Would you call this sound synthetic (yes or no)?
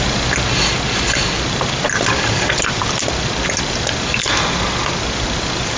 no